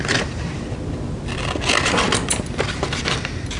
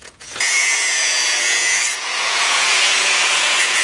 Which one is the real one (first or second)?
first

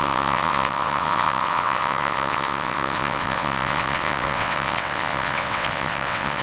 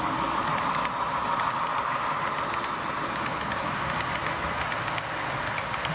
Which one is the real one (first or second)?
second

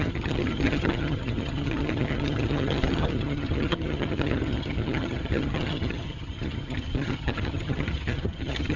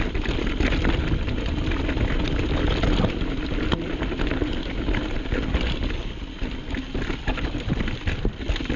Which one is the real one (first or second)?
second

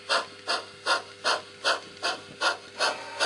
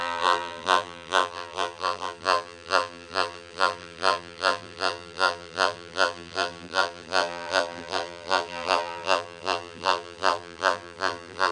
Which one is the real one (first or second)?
first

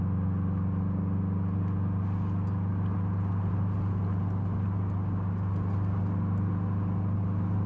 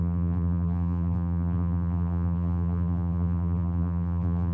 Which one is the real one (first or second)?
first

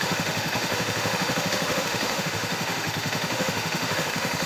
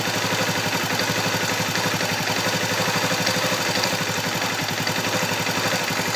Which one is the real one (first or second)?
second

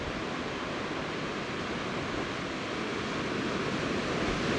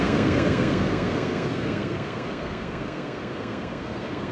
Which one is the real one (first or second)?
first